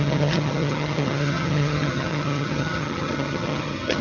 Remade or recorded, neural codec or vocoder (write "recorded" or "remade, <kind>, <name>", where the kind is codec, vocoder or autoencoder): remade, vocoder, HiFi-GAN